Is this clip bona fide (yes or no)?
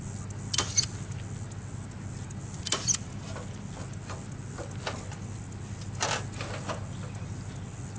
yes